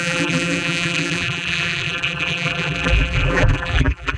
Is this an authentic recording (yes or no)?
no